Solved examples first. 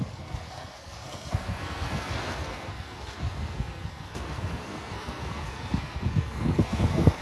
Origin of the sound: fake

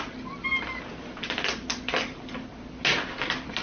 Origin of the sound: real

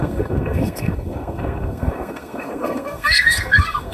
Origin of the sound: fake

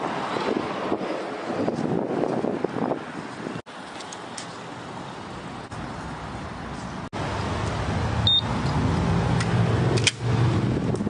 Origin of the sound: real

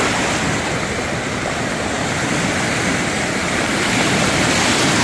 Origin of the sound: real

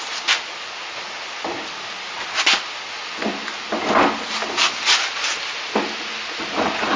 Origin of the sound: real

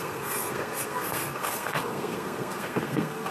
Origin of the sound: fake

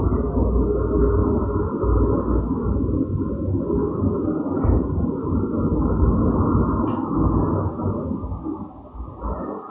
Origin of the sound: real